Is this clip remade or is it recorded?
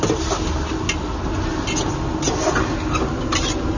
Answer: recorded